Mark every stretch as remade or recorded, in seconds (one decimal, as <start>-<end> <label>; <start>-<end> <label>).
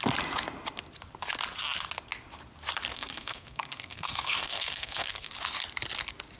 0.0-2.9 recorded; 2.9-5.3 remade; 5.3-6.4 recorded